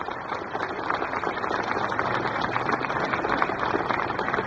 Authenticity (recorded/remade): recorded